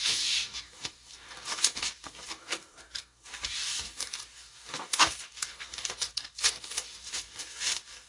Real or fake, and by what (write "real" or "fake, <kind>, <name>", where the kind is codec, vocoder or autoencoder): fake, codec, DAC